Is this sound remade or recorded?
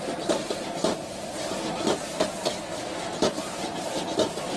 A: recorded